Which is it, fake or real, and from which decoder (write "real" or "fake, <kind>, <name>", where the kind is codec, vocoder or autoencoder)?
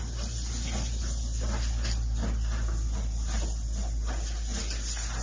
real